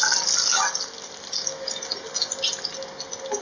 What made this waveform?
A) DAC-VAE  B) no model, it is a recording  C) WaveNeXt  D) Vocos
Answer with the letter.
B